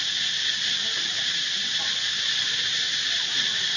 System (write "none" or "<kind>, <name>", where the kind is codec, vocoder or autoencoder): none